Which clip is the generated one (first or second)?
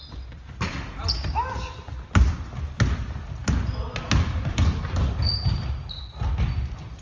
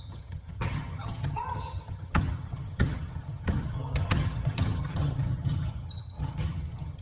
second